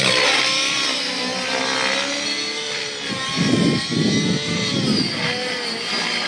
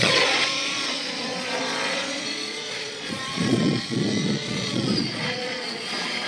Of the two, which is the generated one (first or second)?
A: second